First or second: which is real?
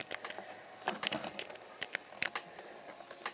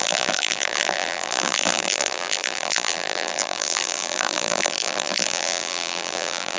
first